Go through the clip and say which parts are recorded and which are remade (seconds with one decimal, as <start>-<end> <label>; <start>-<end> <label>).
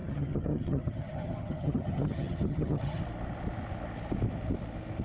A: 0.0-3.0 remade; 3.0-5.0 recorded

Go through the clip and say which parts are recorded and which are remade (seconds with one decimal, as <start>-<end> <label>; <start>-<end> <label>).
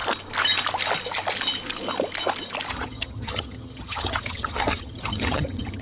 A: 0.0-2.7 recorded; 2.7-5.8 remade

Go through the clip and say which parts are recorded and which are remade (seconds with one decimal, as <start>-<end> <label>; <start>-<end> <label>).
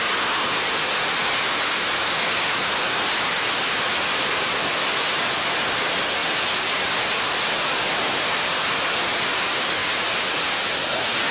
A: 0.0-11.3 recorded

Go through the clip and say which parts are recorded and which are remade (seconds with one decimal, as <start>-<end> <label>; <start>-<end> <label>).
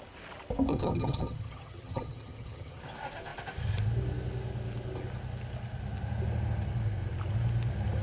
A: 0.0-0.7 recorded; 0.7-2.8 remade; 2.8-8.0 recorded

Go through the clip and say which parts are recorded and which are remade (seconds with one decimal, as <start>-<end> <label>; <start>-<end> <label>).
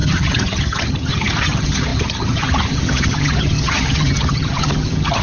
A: 0.0-5.2 remade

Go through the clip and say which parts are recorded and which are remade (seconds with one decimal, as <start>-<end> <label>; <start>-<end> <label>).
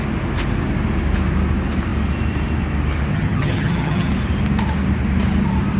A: 0.0-3.1 recorded; 3.1-4.1 remade; 4.1-5.8 recorded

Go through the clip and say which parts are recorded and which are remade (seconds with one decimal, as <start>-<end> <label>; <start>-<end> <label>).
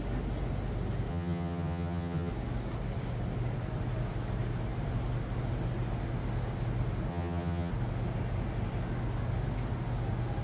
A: 0.0-1.1 recorded; 1.1-2.3 remade; 2.3-7.1 recorded; 7.1-7.7 remade; 7.7-10.4 recorded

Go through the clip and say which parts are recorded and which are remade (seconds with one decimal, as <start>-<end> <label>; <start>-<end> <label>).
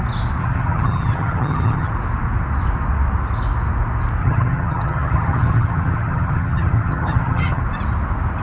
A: 0.0-0.4 recorded; 0.4-1.9 remade; 1.9-4.2 recorded; 4.2-7.6 remade; 7.6-8.4 recorded